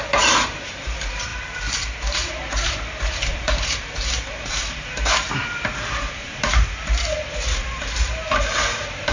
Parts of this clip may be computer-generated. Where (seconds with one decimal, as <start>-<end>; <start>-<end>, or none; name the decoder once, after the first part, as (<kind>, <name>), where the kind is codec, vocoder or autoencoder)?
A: 0.0-1.3 (vocoder, BigVGAN v2); 2.0-9.1